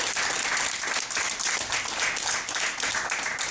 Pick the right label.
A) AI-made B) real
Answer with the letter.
B